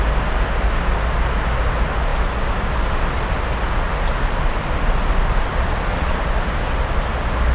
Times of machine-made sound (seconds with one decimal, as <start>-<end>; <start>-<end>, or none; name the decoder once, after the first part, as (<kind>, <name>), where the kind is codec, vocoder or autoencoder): 5.5-6.2 (vocoder, Vocos)